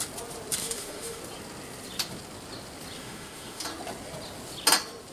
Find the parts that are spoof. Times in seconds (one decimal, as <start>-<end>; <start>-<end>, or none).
0.6-1.2; 3.0-3.6